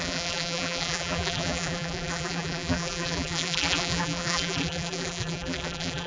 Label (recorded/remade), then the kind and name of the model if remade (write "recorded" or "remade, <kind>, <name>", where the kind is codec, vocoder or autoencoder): remade, vocoder, BigVGAN v2